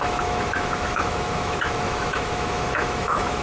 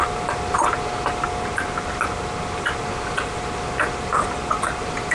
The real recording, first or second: second